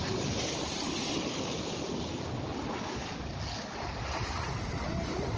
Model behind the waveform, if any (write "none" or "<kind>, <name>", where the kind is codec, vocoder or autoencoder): none